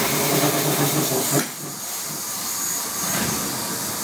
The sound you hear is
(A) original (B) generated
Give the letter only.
A